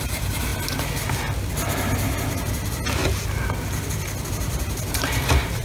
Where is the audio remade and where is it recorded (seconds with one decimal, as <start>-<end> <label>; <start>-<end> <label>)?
0.0-0.5 remade; 0.5-2.4 recorded; 2.4-3.0 remade; 3.0-4.3 recorded; 4.3-5.6 remade